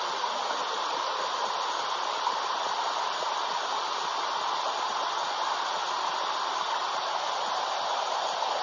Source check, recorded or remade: recorded